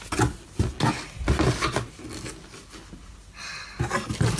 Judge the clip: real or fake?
real